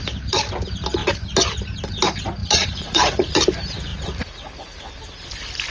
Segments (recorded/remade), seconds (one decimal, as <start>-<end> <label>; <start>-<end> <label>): 0.0-2.4 recorded; 2.4-3.3 remade; 3.3-5.7 recorded